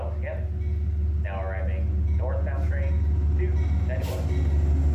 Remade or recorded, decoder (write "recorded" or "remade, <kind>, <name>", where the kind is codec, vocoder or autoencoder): recorded